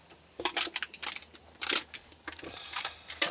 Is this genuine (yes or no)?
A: yes